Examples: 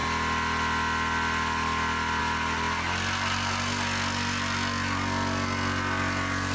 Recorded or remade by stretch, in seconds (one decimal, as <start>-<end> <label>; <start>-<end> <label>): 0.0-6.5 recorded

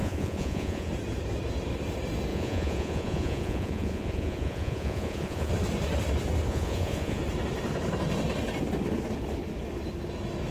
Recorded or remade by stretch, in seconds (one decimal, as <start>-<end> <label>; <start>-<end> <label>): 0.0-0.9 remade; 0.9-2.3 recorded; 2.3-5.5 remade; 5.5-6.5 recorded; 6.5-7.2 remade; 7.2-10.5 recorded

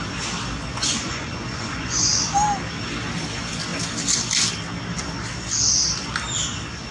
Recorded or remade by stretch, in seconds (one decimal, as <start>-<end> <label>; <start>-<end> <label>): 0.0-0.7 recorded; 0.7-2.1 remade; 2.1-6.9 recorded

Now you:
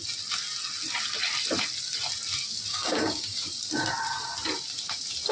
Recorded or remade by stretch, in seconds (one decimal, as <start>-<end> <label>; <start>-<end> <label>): 0.0-2.7 recorded; 2.7-3.4 remade; 3.4-5.3 recorded

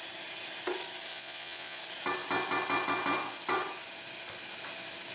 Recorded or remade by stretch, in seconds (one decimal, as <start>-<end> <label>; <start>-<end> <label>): 0.0-1.1 recorded; 1.1-1.8 remade; 1.8-5.1 recorded